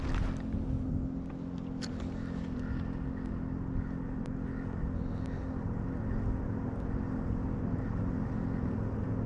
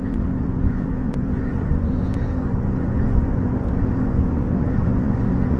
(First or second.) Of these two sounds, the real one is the first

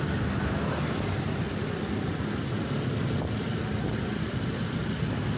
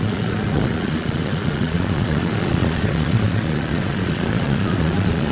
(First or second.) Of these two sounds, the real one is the first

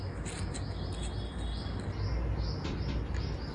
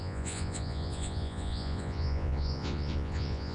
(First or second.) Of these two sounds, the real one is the first